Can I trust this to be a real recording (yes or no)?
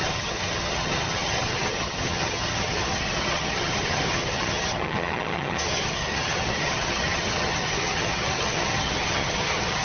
no